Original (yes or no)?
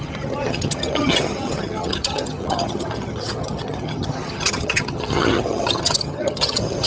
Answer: no